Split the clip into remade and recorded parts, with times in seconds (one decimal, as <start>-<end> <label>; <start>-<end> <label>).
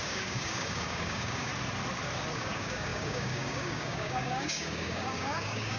0.0-1.5 remade; 1.5-2.3 recorded; 2.3-5.8 remade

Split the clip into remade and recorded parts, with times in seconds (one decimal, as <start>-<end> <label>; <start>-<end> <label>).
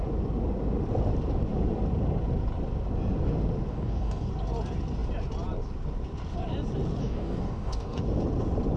0.0-3.7 recorded; 3.7-4.3 remade; 4.3-7.0 recorded; 7.0-8.0 remade; 8.0-8.8 recorded